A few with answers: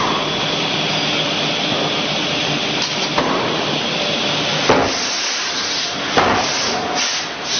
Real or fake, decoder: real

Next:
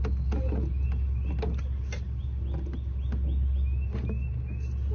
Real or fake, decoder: real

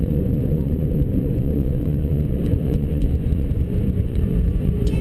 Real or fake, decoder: fake, vocoder, Vocos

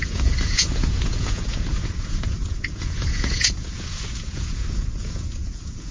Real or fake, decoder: fake, vocoder, Vocos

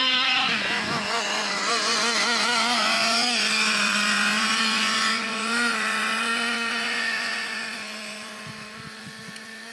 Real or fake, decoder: fake, vocoder, Vocos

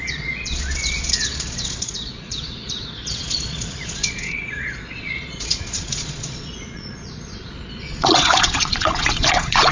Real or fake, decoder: fake, vocoder, Vocos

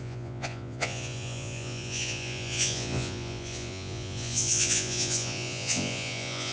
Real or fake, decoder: fake, vocoder, Vocos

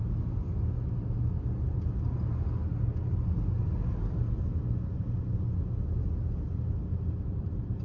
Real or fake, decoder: real